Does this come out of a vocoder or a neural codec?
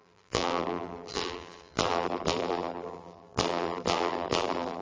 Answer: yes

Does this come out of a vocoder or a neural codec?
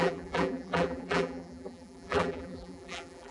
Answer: yes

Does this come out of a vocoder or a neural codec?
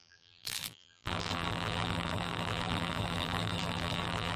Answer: yes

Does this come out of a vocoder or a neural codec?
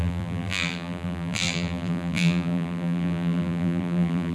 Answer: yes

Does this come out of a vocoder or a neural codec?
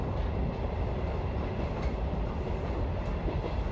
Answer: no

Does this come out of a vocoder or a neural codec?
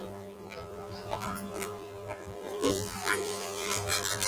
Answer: yes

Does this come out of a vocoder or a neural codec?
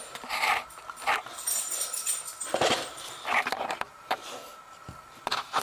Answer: yes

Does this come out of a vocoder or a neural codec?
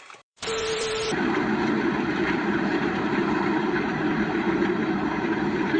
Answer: yes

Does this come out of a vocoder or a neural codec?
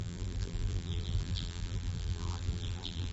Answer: yes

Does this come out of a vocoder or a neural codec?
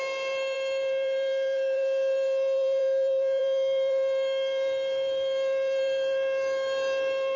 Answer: yes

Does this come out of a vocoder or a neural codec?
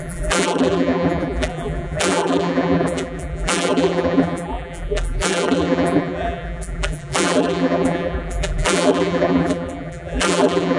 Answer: yes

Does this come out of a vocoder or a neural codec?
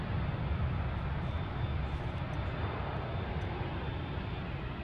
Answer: no